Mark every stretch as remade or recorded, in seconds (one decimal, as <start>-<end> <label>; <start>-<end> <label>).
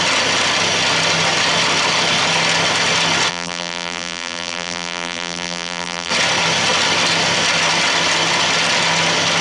0.0-3.3 recorded; 3.3-6.1 remade; 6.1-9.4 recorded